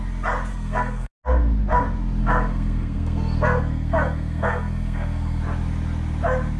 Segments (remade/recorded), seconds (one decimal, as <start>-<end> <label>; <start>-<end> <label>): 0.0-0.5 recorded; 0.5-1.1 remade; 1.1-2.2 recorded; 2.2-5.4 remade; 5.4-6.6 recorded